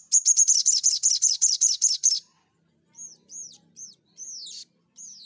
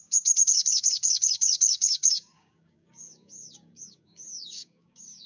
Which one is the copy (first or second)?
second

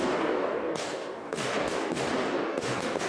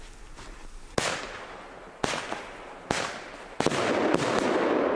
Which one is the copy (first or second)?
first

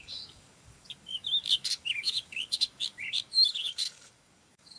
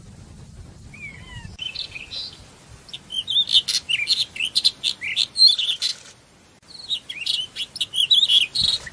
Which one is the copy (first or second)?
first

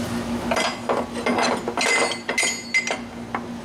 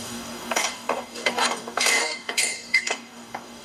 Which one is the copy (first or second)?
second